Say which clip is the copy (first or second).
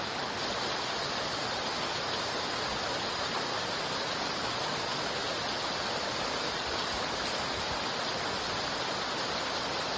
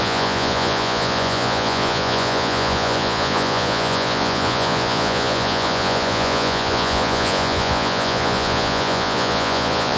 second